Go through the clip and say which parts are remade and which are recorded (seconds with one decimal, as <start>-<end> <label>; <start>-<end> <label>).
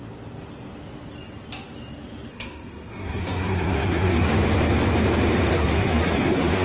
0.0-2.3 recorded; 2.3-4.3 remade; 4.3-5.5 recorded; 5.5-6.6 remade